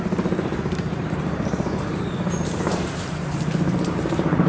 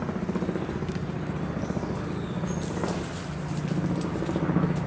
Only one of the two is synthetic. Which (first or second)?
first